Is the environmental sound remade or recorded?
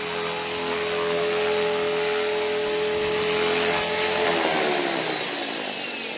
recorded